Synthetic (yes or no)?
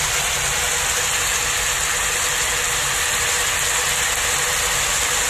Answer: no